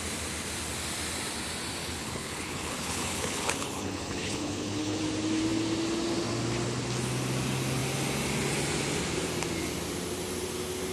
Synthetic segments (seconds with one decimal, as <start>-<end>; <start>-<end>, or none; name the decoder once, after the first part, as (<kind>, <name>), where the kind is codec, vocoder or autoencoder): 1.8-5.0 (codec, HILCodec)